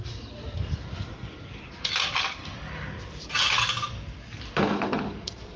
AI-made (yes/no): no